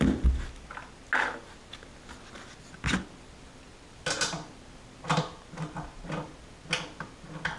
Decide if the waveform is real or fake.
real